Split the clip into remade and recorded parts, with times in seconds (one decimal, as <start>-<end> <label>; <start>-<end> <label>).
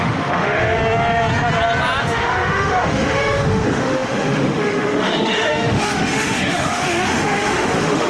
0.0-0.8 remade; 0.8-2.0 recorded; 2.0-8.1 remade